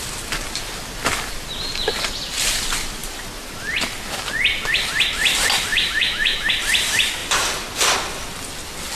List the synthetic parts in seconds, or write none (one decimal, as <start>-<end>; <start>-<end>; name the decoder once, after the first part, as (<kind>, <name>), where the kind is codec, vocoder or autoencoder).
5.7-6.5 (autoencoder, DAC-VAE)